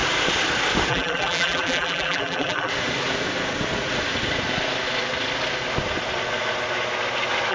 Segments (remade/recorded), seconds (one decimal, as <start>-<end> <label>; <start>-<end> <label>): 0.0-0.9 recorded; 0.9-2.7 remade; 2.7-7.5 recorded